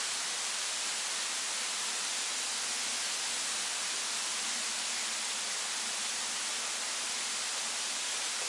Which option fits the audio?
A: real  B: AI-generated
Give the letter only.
A